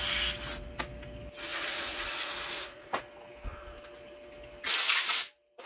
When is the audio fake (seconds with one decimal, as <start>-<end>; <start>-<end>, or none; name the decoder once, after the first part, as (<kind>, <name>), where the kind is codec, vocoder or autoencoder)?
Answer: 1.5-3.0 (vocoder, Vocos)